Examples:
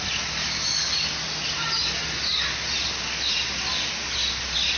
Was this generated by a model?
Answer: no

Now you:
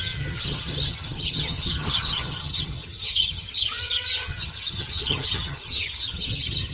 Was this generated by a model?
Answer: yes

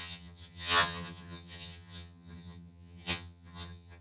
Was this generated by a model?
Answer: yes